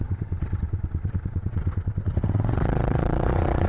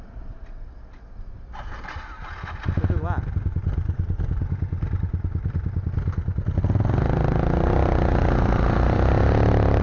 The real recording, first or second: second